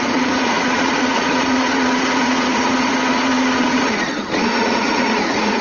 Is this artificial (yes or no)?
yes